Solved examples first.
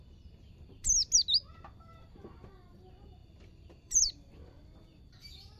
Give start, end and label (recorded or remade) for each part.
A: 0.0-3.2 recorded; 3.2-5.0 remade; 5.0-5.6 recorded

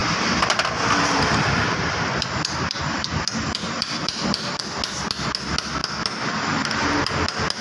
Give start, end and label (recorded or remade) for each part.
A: 0.0-4.6 remade; 4.6-7.6 recorded

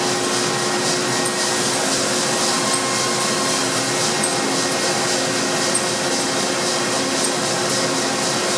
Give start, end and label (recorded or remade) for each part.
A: 0.0-8.6 recorded

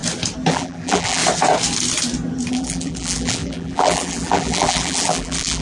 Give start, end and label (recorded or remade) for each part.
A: 0.0-0.5 recorded; 0.5-1.2 remade; 1.2-2.5 recorded; 2.5-5.6 remade

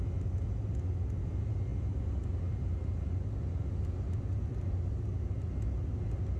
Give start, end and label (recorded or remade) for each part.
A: 0.0-6.4 recorded